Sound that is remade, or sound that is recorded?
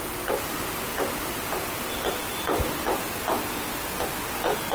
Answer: recorded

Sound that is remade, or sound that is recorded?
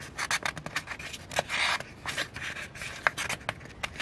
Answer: recorded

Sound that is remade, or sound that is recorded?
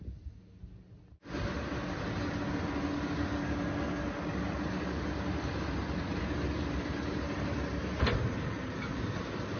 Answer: recorded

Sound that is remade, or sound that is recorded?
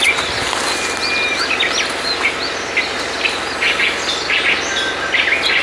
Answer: recorded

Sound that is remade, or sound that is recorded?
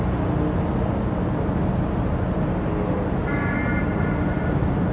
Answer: recorded